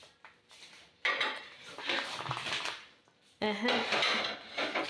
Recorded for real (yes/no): yes